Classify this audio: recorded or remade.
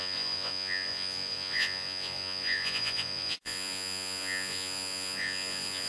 remade